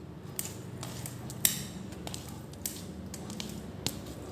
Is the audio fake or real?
real